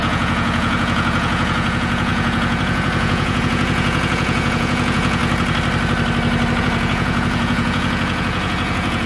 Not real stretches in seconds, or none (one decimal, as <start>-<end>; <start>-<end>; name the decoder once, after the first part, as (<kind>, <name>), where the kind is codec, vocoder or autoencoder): 0.0-5.2 (vocoder, Vocos); 6.6-9.1